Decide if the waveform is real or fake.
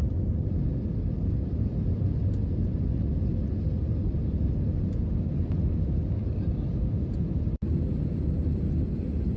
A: real